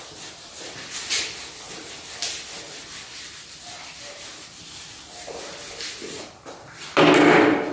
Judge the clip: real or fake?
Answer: real